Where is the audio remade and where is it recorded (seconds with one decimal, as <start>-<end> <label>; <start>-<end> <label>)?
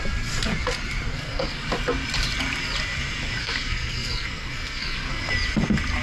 0.0-1.1 recorded; 1.1-1.6 remade; 1.6-3.4 recorded; 3.4-5.3 remade; 5.3-6.0 recorded